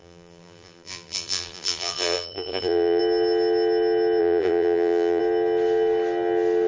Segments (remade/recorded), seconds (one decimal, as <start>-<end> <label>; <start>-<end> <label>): 0.0-3.0 remade; 3.0-4.2 recorded; 4.2-5.2 remade; 5.2-6.7 recorded